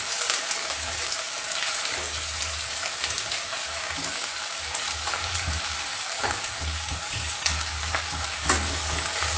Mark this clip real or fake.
fake